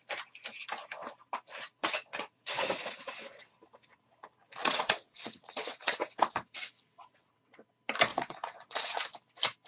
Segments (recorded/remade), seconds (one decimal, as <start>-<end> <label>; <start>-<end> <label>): 0.0-1.8 recorded; 1.8-3.5 remade; 3.5-4.6 recorded; 4.6-7.7 remade; 7.7-8.1 recorded; 8.1-9.0 remade; 9.0-9.7 recorded